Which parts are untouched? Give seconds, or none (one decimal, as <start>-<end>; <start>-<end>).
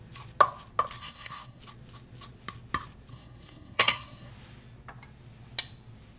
0.0-1.0; 1.6-3.1; 4.3-6.2